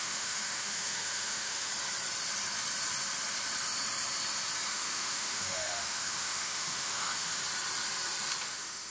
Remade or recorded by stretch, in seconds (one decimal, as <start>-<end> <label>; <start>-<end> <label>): 0.0-1.7 remade; 1.7-4.7 recorded; 4.7-7.4 remade; 7.4-8.5 recorded; 8.5-8.9 remade